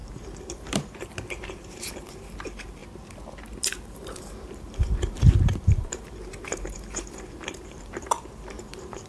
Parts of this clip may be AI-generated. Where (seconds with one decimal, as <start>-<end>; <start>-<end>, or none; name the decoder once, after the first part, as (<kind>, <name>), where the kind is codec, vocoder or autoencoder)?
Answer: 0.0-2.8 (vocoder, BigVGAN v2); 3.6-9.1